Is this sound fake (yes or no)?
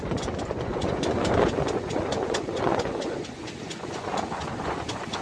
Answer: yes